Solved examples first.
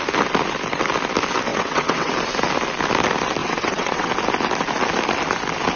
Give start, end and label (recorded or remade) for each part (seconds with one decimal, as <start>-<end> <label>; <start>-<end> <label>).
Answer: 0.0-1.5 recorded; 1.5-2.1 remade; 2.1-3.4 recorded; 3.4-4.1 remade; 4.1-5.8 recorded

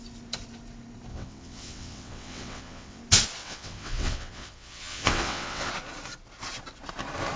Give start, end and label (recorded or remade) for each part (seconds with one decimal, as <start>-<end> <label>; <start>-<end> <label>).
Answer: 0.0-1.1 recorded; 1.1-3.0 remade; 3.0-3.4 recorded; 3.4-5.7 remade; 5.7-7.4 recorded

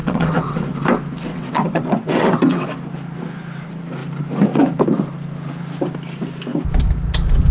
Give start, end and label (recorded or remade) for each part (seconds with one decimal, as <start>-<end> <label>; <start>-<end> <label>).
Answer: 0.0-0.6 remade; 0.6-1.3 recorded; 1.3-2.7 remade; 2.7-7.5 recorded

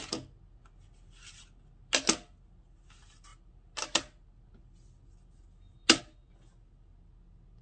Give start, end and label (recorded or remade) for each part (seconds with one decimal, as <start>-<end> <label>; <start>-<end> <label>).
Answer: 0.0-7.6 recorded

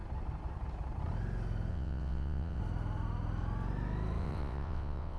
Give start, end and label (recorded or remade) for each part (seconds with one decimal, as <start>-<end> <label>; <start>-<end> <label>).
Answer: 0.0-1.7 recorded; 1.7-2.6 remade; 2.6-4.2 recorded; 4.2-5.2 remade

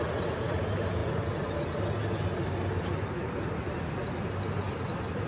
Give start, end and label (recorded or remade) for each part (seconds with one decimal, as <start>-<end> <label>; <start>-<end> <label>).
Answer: 0.0-5.3 recorded

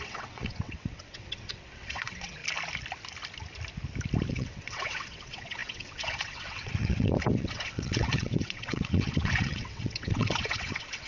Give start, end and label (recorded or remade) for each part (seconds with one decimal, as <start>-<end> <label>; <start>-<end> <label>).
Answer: 0.0-2.4 remade; 2.4-4.3 recorded; 4.3-11.1 remade